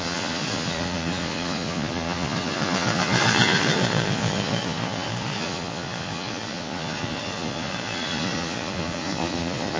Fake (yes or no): yes